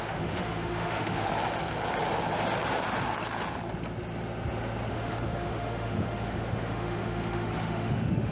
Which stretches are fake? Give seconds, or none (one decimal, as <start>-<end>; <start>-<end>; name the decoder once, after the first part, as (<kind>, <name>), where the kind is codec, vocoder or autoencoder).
0.0-1.3 (autoencoder, DAC-VAE); 4.9-8.3